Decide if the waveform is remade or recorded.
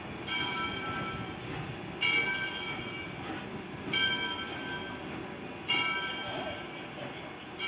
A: recorded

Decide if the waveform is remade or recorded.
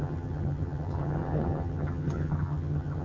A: remade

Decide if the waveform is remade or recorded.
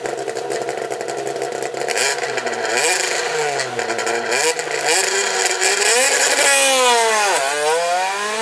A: recorded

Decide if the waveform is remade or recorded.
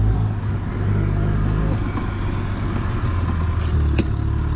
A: recorded